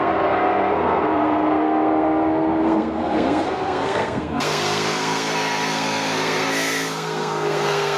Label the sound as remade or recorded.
remade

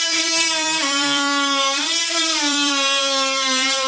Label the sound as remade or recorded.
remade